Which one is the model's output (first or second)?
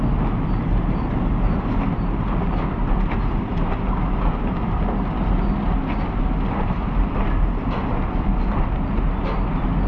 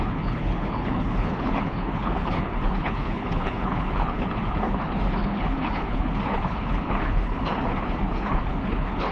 second